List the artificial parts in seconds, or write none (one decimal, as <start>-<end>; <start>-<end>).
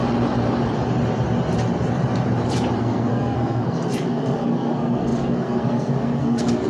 2.8-6.7